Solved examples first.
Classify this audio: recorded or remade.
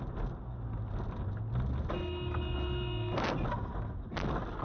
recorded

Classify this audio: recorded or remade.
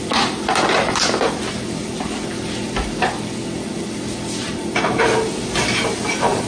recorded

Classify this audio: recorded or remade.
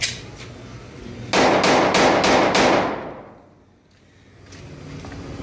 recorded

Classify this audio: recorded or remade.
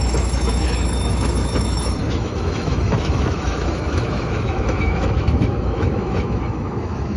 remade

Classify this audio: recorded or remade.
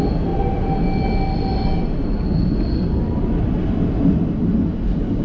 recorded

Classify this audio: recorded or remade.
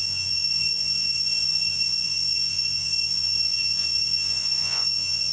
remade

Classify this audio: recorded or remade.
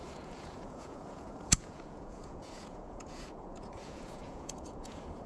remade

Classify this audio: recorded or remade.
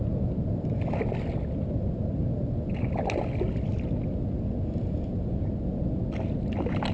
recorded